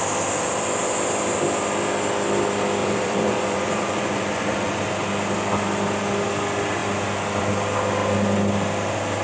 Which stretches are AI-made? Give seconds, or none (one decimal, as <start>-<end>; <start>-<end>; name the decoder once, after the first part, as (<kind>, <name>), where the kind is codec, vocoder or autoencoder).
2.8-4.8 (vocoder, Vocos)